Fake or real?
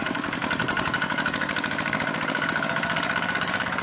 fake